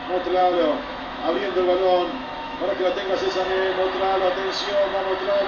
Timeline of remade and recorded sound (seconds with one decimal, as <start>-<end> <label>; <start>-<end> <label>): 0.0-0.4 recorded; 0.4-3.7 remade; 3.7-5.5 recorded